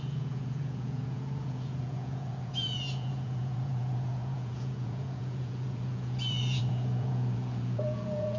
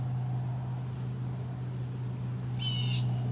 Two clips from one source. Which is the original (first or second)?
second